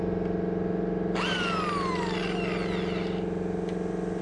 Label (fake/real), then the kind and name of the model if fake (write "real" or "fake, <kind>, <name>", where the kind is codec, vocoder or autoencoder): real